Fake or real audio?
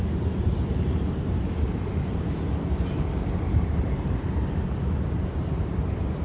fake